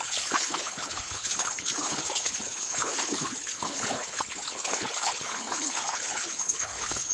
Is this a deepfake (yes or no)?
yes